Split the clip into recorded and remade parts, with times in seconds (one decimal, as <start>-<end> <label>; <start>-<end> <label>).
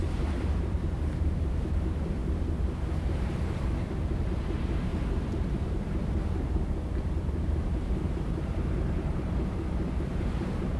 0.0-2.2 remade; 2.2-4.5 recorded; 4.5-4.9 remade; 4.9-7.2 recorded; 7.2-10.8 remade